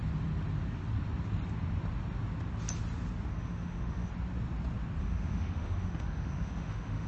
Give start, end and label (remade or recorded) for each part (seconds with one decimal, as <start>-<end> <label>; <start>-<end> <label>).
0.0-3.3 recorded; 3.3-4.1 remade; 4.1-5.0 recorded; 5.0-7.1 remade